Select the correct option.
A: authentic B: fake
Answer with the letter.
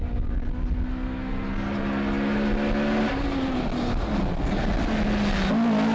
A